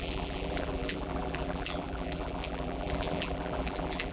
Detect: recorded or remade remade